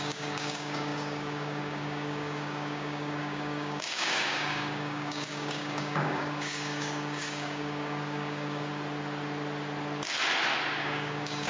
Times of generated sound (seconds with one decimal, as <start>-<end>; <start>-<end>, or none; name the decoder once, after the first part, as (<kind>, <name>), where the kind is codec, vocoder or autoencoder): 0.0-8.7 (codec, DAC); 10.8-11.5